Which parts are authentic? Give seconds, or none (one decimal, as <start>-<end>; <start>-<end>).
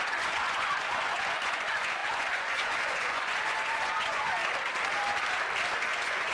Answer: 4.4-5.8